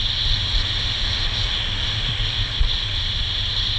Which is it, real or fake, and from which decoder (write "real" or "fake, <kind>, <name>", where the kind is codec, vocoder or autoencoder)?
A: real